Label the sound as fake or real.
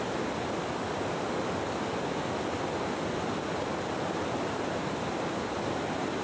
real